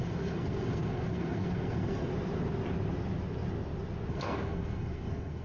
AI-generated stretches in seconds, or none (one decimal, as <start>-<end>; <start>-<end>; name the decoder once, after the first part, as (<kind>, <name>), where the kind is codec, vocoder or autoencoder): 0.0-2.1 (codec, SNAC); 4.1-5.4